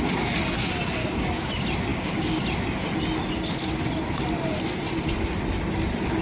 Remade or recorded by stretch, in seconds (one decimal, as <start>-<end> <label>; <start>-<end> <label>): 0.0-1.0 recorded; 1.0-1.5 remade; 1.5-1.9 recorded; 1.9-2.4 remade; 2.4-6.2 recorded